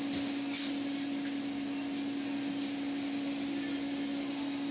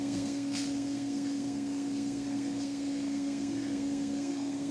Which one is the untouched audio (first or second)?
first